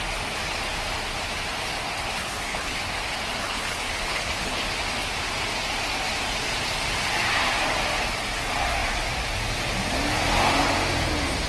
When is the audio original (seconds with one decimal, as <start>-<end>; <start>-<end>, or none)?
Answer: 0.0-2.1; 2.8-3.4; 4.6-11.5